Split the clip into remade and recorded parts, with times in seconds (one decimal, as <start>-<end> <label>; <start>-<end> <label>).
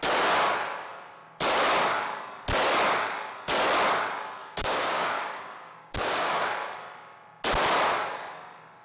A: 0.0-4.4 recorded; 4.4-6.4 remade; 6.4-8.8 recorded